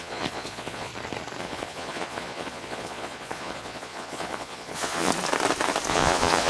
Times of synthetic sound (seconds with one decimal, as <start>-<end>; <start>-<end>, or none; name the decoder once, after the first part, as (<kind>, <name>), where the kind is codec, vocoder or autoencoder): 0.0-0.9 (vocoder, Vocos); 1.4-5.1; 5.9-6.5